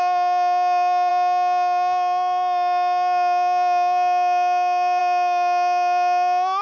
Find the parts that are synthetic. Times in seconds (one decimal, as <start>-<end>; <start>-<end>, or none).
none